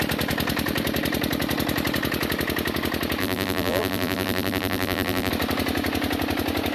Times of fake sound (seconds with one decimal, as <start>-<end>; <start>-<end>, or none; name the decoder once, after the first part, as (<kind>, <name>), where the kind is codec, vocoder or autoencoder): 3.2-5.3 (vocoder, BigVGAN v2)